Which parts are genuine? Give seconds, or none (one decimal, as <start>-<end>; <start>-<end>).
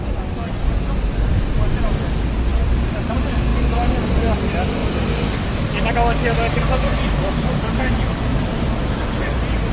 0.0-2.5; 3.1-4.8; 5.6-6.9